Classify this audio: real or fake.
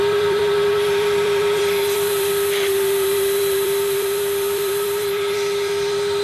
fake